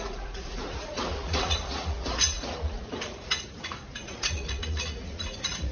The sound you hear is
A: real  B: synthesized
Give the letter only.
B